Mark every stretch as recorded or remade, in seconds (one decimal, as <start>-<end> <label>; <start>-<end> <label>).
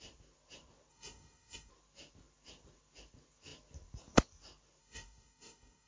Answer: 0.0-0.9 recorded; 0.9-1.7 remade; 1.7-4.8 recorded; 4.8-5.9 remade